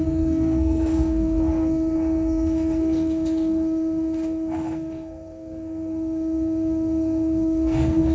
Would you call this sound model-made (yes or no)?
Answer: yes